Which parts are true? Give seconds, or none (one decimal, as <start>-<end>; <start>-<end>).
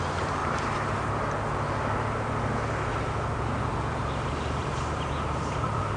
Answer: 0.4-4.0; 4.6-5.3